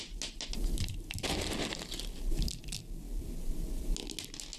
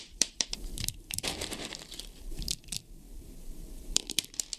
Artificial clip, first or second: second